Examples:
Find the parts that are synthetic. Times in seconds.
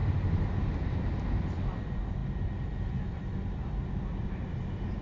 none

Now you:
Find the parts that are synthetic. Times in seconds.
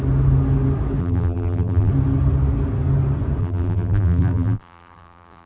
1.0-1.9 (vocoder, BigVGAN v2); 3.4-5.5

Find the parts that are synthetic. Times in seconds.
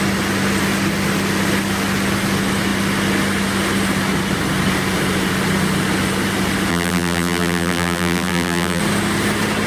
6.7-8.8 (vocoder, BigVGAN v2)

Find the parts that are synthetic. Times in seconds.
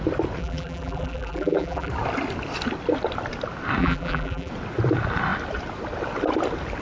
0.4-1.9 (vocoder, BigVGAN v2); 3.8-4.5